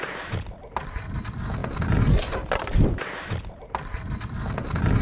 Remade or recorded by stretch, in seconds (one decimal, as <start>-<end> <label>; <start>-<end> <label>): 0.0-5.0 recorded